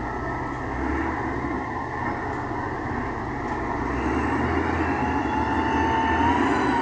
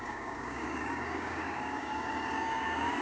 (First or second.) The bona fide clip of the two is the first